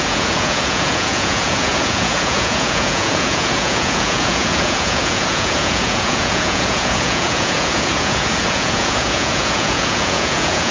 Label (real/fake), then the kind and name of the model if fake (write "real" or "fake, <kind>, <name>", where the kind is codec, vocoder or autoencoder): fake, vocoder, Vocos